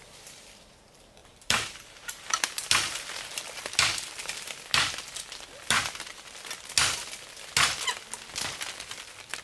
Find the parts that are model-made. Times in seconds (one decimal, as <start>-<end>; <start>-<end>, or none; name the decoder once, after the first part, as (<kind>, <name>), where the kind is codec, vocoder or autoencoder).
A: 1.2-3.4 (vocoder, BigVGAN v2)